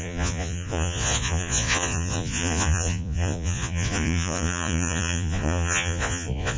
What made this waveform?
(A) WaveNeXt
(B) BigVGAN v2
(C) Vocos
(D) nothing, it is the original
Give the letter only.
C